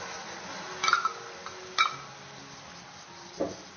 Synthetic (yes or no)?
no